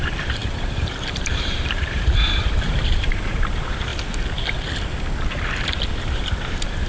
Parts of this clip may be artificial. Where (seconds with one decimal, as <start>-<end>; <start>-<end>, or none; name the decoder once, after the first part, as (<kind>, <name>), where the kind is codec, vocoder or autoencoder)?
0.0-3.9 (vocoder, BigVGAN v2); 6.0-6.9